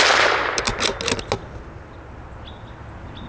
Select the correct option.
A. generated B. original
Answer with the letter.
B